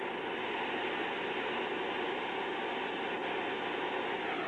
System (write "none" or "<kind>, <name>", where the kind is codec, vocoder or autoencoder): none